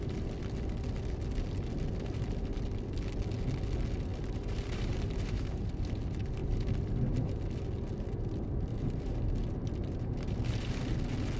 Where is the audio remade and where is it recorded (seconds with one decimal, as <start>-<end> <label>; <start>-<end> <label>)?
0.0-4.1 recorded; 4.1-5.7 remade; 5.7-6.4 recorded; 6.4-7.4 remade; 7.4-8.7 recorded; 8.7-9.2 remade; 9.2-9.8 recorded; 9.8-10.4 remade; 10.4-11.4 recorded

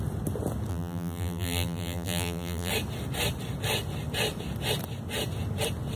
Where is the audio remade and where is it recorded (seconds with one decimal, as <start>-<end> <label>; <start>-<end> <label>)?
0.0-0.7 recorded; 0.7-2.7 remade; 2.7-6.0 recorded

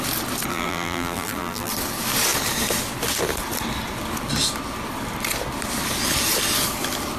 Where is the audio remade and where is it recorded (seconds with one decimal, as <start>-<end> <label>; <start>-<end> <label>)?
0.0-0.5 recorded; 0.5-1.7 remade; 1.7-7.2 recorded

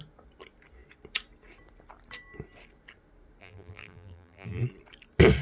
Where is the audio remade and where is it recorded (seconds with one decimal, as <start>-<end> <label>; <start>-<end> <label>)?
0.0-3.4 recorded; 3.4-4.6 remade; 4.6-5.4 recorded

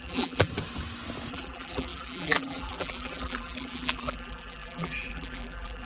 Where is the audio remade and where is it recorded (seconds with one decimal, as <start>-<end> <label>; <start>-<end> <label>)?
0.0-0.5 remade; 0.5-1.3 recorded; 1.3-5.9 remade

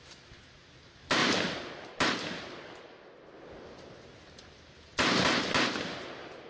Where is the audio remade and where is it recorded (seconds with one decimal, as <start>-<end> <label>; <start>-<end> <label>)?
0.0-6.5 recorded